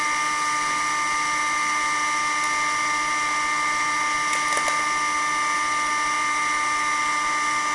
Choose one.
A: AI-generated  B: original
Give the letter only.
B